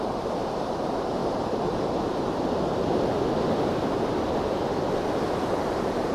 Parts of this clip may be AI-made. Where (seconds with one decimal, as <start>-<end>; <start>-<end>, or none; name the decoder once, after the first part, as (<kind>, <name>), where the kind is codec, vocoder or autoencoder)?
0.0-1.2 (vocoder, BigVGAN v2); 4.9-6.1